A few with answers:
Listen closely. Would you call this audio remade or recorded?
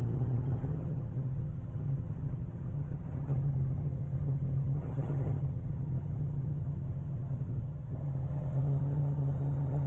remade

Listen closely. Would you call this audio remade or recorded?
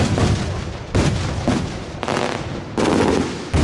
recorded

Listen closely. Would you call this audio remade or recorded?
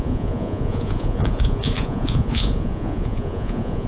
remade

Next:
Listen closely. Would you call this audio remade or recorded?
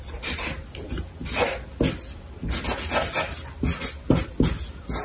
recorded